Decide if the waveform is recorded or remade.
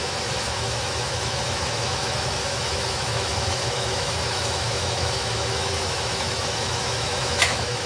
remade